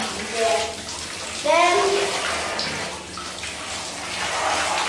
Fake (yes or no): no